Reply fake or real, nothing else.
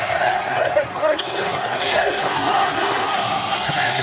fake